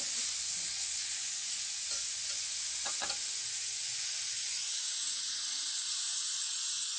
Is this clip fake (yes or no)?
yes